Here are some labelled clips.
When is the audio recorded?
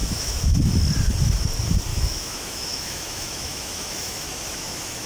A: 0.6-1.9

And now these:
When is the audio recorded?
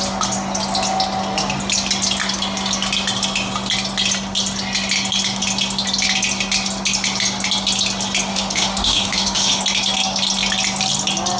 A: 0.0-8.3; 9.6-11.4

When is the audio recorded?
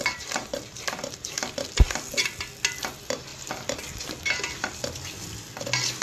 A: 0.0-6.0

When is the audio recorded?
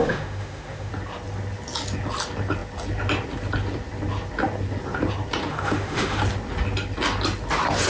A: 0.9-5.5; 6.2-7.9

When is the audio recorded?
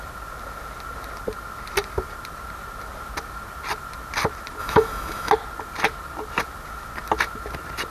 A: 0.0-4.6; 5.3-7.9